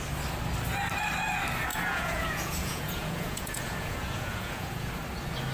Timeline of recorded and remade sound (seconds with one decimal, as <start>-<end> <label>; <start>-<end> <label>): 0.0-1.7 recorded; 1.7-4.9 remade; 4.9-5.5 recorded